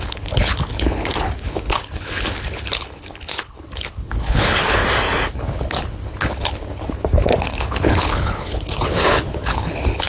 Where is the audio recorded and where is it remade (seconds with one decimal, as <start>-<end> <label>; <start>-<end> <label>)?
0.0-4.8 remade; 4.8-5.4 recorded; 5.4-10.1 remade